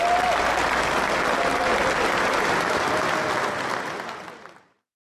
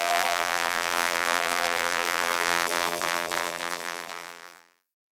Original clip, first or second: first